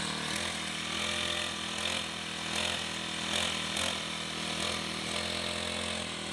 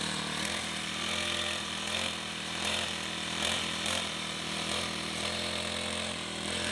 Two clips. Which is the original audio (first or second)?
first